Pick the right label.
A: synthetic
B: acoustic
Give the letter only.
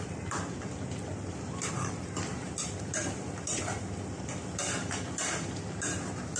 A